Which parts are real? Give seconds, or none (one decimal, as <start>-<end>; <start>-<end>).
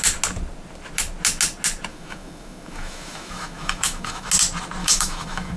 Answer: 0.0-1.9; 4.3-4.8